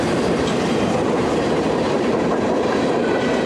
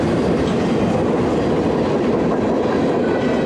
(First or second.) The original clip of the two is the second